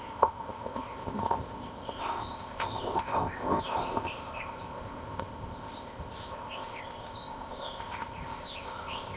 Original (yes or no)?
no